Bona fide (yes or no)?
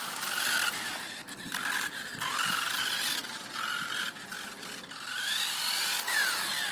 yes